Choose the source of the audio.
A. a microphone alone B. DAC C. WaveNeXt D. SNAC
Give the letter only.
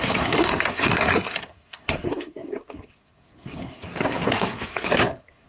D